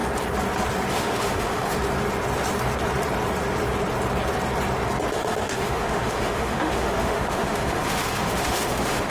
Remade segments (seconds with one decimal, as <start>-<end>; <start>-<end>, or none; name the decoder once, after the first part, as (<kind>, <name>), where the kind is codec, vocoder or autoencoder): 0.9-1.7 (autoencoder, DAC-VAE); 5.1-9.1